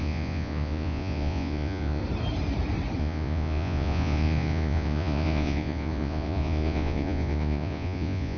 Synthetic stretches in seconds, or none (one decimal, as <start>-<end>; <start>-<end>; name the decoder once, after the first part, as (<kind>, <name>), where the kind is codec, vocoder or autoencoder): 0.0-2.0 (vocoder, Vocos); 3.0-8.4

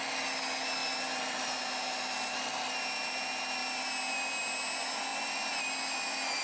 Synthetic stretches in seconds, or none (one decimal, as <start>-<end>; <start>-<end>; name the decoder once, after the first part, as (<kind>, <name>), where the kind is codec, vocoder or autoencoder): none

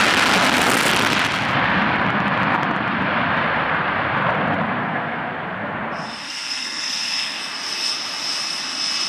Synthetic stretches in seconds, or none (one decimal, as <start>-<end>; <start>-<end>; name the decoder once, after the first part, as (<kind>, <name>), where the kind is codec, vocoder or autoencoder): 4.8-5.3 (codec, SNAC); 6.2-7.4

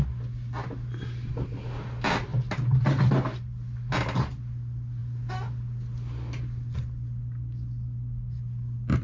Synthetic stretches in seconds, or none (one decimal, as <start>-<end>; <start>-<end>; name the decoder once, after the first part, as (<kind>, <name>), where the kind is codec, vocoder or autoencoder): none

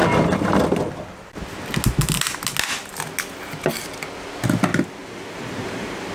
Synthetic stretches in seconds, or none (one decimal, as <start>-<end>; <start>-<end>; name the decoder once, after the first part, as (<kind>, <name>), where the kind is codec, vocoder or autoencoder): 5.0-6.1 (vocoder, BigVGAN v2)